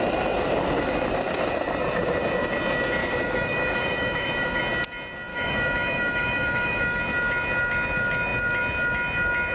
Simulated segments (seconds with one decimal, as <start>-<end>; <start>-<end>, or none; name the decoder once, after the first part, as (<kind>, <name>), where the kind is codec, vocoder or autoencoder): 3.0-4.6 (autoencoder, DAC-VAE); 5.3-7.0